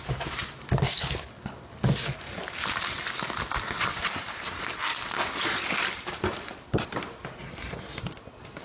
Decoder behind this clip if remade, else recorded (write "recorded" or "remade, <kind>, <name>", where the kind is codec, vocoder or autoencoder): recorded